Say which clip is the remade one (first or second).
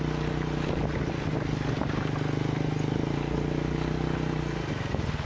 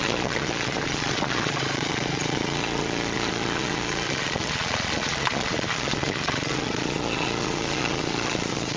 second